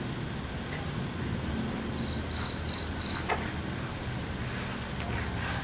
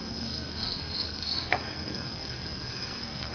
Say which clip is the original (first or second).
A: first